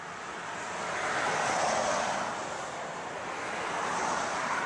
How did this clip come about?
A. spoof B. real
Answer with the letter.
B